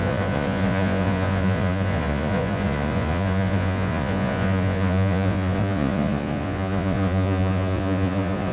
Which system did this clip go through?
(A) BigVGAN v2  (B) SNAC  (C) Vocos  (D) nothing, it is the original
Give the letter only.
C